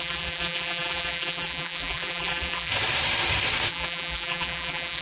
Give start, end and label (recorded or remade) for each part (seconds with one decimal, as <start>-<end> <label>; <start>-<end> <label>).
0.0-2.7 remade; 2.7-3.7 recorded; 3.7-5.0 remade